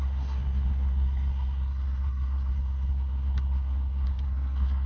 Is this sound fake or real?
fake